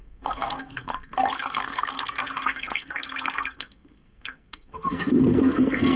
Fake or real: fake